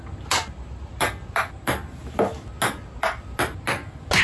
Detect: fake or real real